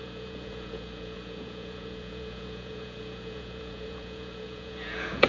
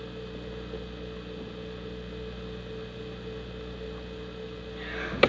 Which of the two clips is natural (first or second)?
second